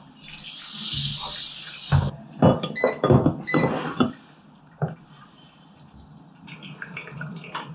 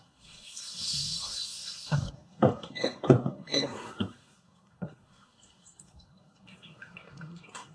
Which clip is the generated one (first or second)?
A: second